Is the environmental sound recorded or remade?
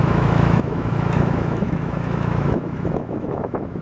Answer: remade